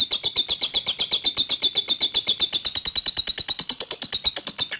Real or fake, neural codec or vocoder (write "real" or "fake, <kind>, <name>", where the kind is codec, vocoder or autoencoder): real